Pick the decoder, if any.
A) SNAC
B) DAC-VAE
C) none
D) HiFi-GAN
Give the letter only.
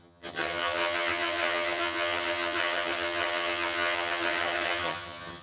D